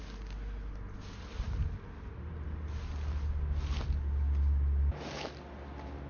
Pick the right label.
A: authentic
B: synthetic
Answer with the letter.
A